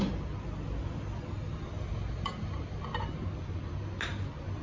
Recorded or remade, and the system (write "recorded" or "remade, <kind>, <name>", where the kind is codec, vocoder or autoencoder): recorded